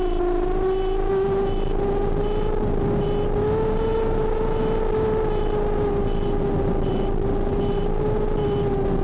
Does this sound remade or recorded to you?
recorded